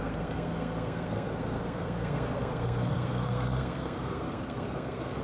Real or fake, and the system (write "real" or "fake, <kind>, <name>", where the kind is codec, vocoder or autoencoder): fake, codec, SNAC